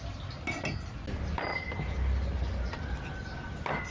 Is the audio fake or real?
real